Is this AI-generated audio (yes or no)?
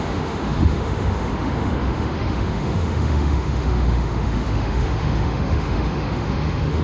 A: yes